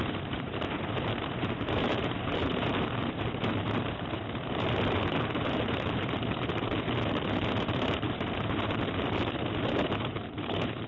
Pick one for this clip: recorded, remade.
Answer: remade